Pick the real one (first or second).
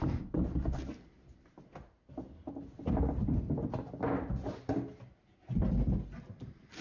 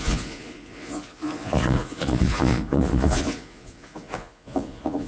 first